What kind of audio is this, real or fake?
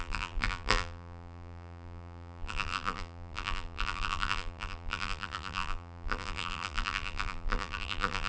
fake